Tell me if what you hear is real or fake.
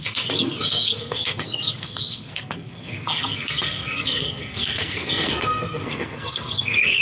fake